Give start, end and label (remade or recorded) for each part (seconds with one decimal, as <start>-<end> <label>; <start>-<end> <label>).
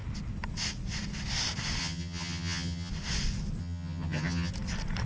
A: 0.0-1.8 recorded; 1.8-2.9 remade; 2.9-3.6 recorded; 3.6-4.5 remade; 4.5-5.1 recorded